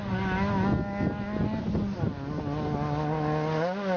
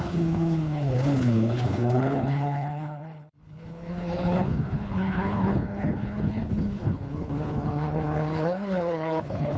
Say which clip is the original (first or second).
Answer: first